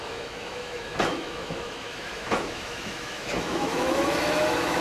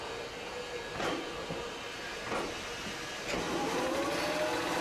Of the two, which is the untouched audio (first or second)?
second